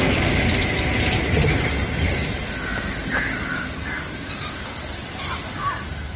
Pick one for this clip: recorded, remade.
recorded